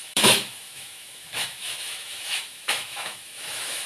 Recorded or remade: remade